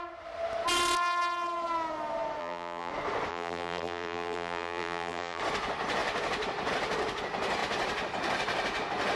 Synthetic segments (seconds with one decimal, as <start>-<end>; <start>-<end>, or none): 2.4-2.9; 3.3-5.4